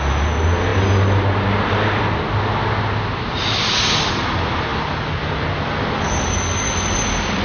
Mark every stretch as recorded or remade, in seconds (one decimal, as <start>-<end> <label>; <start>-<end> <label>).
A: 0.0-7.4 recorded